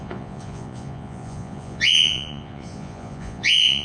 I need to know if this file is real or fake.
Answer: fake